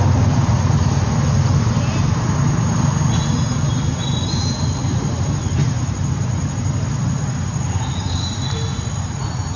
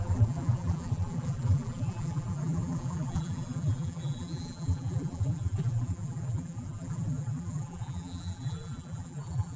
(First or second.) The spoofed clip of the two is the second